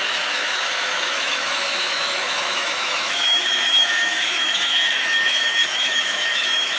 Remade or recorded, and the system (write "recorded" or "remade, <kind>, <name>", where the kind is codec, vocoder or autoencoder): remade, autoencoder, DAC-VAE